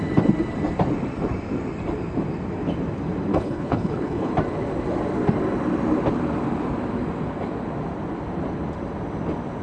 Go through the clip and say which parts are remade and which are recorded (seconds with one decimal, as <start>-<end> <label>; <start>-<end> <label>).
0.0-3.3 recorded; 3.3-4.3 remade; 4.3-9.6 recorded